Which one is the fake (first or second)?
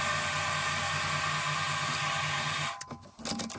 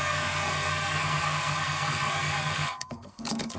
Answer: second